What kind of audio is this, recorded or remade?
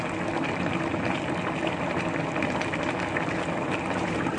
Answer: recorded